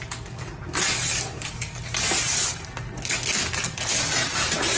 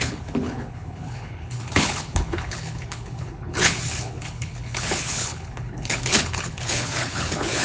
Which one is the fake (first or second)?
second